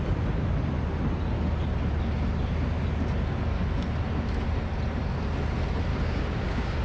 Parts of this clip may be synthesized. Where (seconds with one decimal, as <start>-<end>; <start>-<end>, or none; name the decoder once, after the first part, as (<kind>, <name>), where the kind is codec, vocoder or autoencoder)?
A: 5.9-6.8 (codec, DAC)